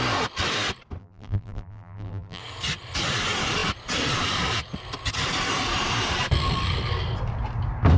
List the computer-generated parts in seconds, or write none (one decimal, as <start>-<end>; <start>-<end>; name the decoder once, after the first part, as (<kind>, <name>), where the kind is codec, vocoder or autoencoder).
1.0-2.4 (vocoder, BigVGAN v2)